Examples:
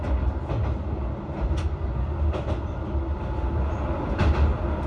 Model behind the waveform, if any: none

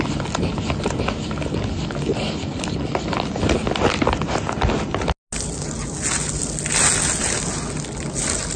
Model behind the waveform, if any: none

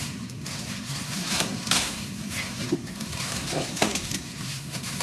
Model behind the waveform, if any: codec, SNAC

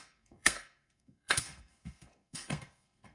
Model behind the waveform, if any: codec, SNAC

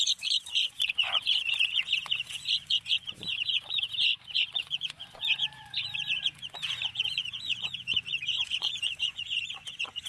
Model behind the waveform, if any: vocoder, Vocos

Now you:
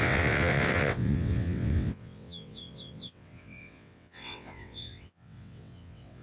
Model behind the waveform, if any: vocoder, WaveNeXt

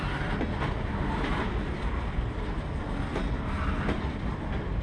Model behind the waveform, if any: none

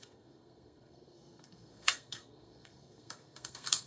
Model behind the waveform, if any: codec, SNAC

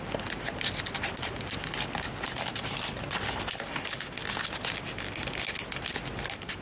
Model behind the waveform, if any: none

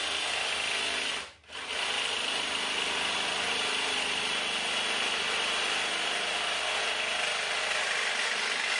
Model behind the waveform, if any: none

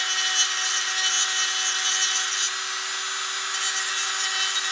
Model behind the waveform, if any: none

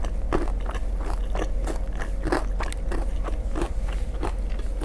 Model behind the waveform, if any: none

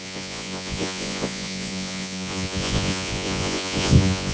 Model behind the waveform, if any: vocoder, Vocos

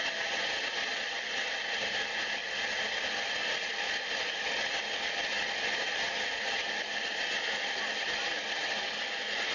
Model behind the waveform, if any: none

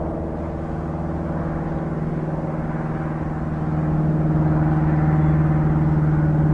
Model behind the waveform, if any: none